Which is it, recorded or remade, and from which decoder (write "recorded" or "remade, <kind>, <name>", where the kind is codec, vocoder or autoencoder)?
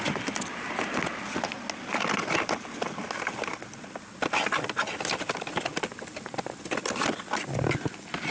recorded